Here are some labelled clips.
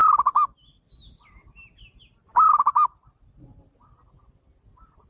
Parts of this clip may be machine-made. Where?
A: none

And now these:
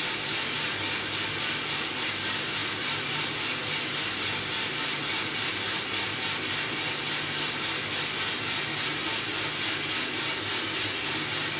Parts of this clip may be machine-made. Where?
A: none

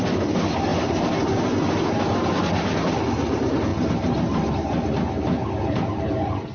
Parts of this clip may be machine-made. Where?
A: none

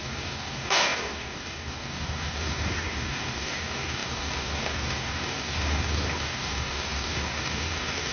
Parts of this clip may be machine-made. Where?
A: 0.0-8.1 (codec, DAC)

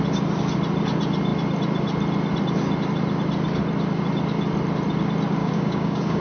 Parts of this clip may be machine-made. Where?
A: 5.4-6.2 (codec, DAC)